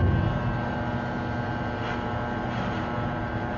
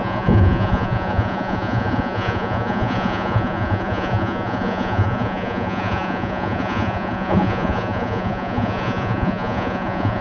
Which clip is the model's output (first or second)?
second